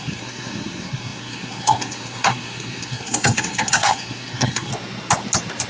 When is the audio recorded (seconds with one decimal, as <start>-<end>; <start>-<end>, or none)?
4.7-5.7